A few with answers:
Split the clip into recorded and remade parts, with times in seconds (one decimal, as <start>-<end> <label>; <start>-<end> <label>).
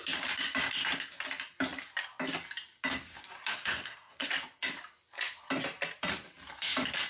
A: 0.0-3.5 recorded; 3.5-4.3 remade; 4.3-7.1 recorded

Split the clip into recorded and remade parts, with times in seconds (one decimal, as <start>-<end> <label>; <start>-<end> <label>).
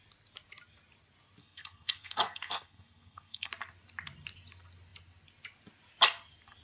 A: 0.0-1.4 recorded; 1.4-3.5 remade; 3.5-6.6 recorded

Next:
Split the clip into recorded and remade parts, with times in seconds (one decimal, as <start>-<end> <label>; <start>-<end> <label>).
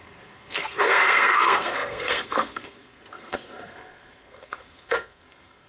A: 0.0-5.7 remade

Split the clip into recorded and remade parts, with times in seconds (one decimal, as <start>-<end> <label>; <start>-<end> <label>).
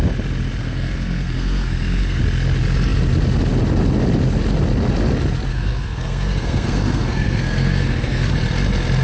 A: 0.0-0.6 recorded; 0.6-2.2 remade; 2.2-5.5 recorded; 5.5-8.3 remade; 8.3-9.0 recorded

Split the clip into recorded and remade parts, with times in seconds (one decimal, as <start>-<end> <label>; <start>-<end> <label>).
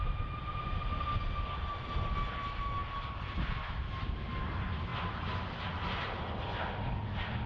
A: 0.0-7.5 recorded